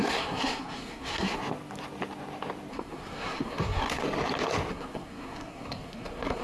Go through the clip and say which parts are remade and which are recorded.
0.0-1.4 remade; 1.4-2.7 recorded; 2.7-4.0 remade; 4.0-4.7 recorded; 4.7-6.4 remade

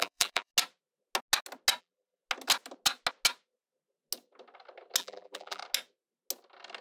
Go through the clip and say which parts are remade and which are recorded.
0.0-0.5 remade; 0.5-1.8 recorded; 1.8-2.2 remade; 2.2-5.0 recorded; 5.0-5.6 remade; 5.6-6.8 recorded

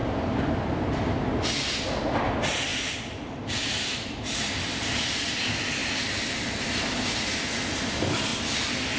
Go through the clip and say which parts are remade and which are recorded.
0.0-0.6 remade; 0.6-2.7 recorded; 2.7-5.3 remade; 5.3-5.8 recorded; 5.8-7.3 remade; 7.3-9.0 recorded

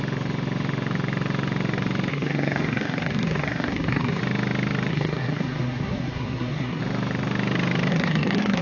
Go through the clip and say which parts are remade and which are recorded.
0.0-2.1 recorded; 2.1-4.2 remade; 4.2-4.9 recorded; 4.9-6.8 remade; 6.8-7.9 recorded; 7.9-8.6 remade

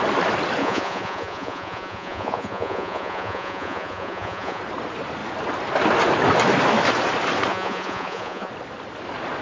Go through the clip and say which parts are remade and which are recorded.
0.0-0.6 recorded; 0.6-4.6 remade; 4.6-7.5 recorded; 7.5-8.5 remade; 8.5-9.4 recorded

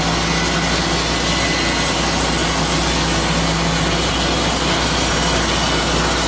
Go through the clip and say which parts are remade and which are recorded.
0.0-6.3 recorded